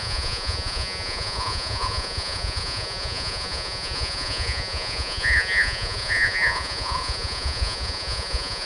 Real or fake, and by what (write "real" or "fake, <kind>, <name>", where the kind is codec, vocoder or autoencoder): fake, vocoder, Vocos